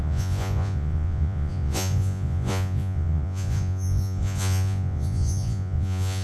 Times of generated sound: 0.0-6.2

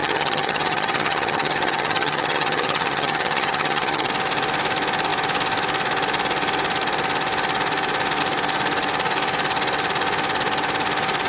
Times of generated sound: 0.0-4.1

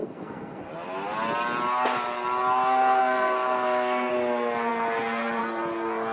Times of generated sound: 0.0-0.6; 3.0-4.1

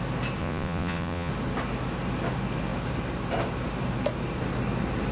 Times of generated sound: 0.4-1.3

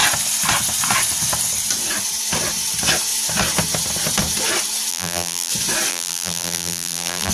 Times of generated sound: 4.9-5.5; 5.9-7.3